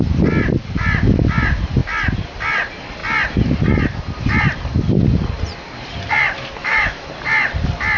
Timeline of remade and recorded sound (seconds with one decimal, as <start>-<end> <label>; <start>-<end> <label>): 0.0-6.6 recorded; 6.6-7.1 remade; 7.1-8.0 recorded